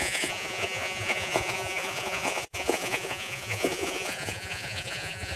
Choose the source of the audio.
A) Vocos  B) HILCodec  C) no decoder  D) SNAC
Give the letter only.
A